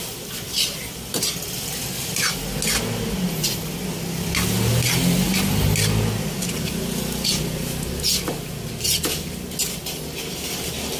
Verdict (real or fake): real